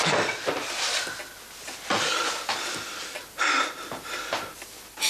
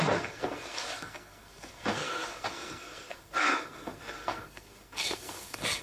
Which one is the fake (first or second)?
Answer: second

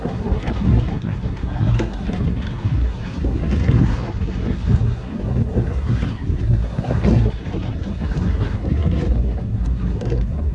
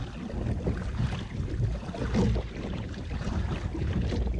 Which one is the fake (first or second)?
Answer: first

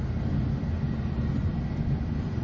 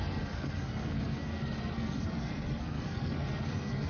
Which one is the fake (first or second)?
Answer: second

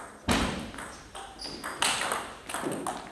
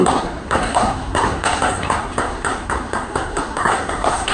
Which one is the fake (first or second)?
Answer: second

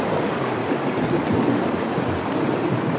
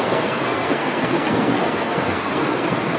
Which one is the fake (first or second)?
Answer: second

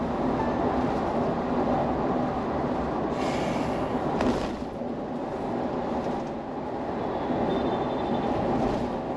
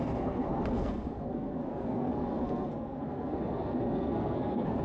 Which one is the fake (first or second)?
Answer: second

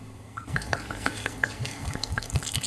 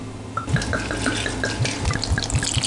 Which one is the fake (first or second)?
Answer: first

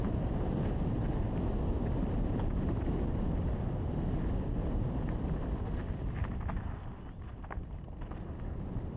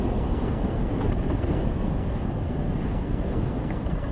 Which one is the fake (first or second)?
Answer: second